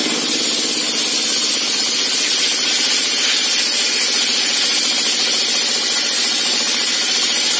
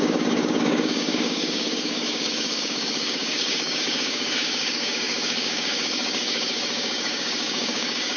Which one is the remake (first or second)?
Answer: second